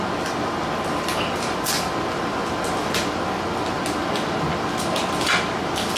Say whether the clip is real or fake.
real